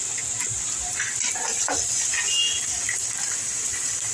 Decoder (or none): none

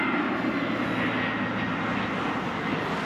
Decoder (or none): none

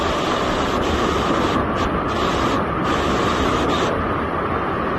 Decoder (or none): none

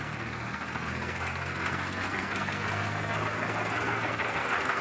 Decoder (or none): codec, SNAC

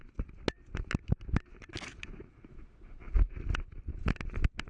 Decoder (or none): none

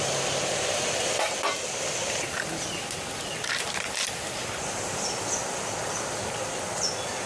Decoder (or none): none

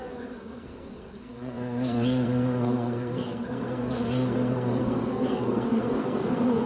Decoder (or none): codec, SNAC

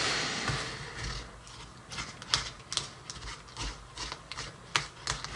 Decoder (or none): none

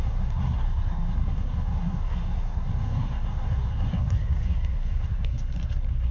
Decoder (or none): codec, SNAC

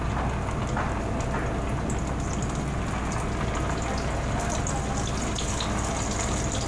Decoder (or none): none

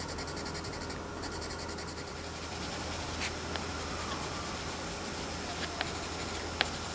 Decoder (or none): none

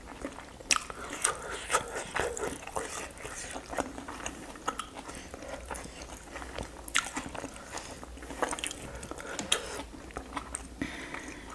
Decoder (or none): none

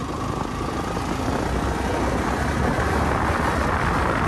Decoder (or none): none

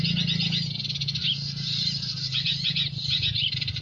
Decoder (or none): none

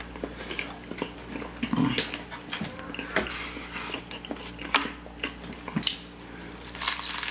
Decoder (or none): none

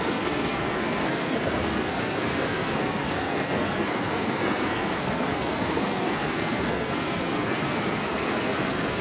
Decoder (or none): codec, SNAC